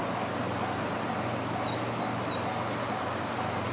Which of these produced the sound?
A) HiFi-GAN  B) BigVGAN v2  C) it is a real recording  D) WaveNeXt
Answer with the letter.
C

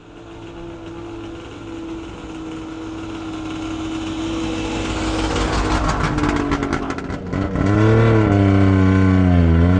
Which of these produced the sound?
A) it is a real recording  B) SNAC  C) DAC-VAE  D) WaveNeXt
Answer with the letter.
A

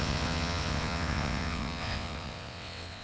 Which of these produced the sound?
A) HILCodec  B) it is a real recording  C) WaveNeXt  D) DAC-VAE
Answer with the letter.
C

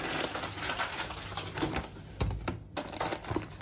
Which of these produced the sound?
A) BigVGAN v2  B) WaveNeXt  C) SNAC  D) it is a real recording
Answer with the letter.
D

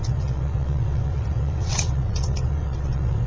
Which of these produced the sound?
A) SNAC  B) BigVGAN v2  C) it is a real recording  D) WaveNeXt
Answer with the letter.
D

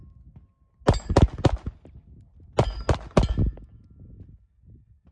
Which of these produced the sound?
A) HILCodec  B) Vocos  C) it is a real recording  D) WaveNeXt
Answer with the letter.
C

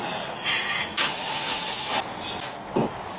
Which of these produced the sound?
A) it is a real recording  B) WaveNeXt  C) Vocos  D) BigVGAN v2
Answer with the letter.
A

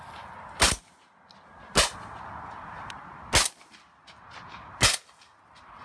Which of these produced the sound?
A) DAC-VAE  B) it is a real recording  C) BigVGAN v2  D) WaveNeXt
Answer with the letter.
B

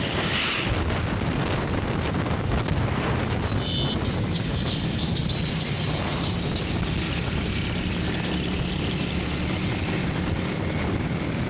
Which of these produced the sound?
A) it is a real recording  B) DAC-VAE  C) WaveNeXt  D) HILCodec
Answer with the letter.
A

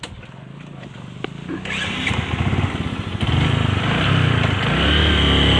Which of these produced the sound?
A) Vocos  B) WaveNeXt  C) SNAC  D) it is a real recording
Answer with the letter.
D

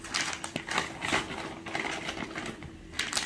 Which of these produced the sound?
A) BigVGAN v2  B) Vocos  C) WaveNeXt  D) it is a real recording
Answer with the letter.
D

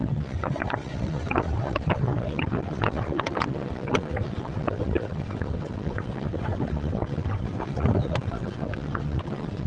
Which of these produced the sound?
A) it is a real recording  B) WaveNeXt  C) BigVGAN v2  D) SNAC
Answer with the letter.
B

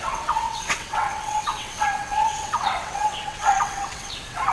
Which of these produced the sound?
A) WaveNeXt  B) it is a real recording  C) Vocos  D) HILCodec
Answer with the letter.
A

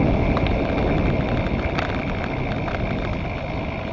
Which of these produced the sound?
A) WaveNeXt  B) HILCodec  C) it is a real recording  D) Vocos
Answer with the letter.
C